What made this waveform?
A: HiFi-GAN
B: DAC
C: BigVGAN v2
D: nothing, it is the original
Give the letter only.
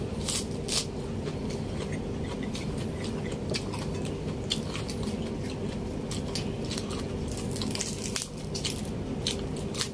D